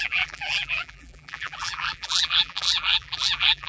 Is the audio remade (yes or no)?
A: yes